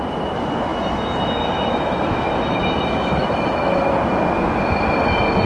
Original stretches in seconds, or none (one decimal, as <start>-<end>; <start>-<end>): 0.0-0.7; 4.0-5.5